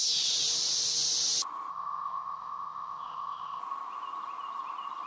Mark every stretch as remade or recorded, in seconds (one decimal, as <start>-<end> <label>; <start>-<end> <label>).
0.0-1.7 recorded; 1.7-3.6 remade; 3.6-5.1 recorded